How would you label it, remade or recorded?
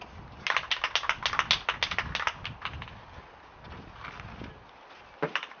recorded